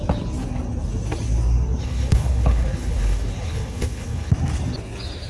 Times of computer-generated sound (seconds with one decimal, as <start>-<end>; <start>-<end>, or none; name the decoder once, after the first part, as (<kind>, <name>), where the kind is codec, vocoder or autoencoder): 1.8-4.3 (codec, HILCodec)